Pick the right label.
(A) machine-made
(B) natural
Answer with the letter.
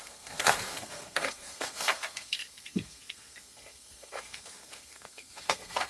A